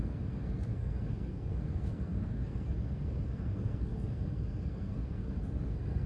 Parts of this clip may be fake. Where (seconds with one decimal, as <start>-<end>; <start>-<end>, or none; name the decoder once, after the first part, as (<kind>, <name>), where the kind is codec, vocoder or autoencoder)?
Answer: 0.0-6.1 (codec, SNAC)